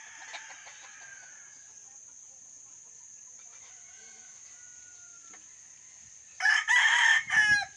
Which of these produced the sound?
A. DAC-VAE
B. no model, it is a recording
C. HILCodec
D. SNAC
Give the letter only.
B